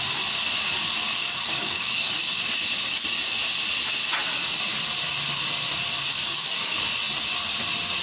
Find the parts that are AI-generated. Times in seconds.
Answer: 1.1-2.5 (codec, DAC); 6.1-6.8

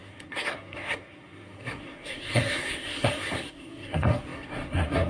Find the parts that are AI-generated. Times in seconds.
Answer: 0.0-5.1 (codec, SNAC)

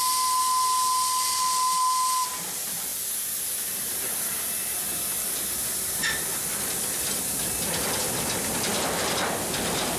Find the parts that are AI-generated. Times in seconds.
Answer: none